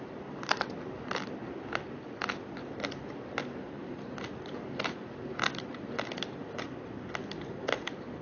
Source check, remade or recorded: recorded